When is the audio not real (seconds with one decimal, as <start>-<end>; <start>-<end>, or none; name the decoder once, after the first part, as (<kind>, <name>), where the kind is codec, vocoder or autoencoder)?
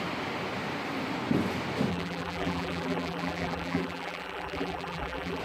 1.9-5.4 (vocoder, BigVGAN v2)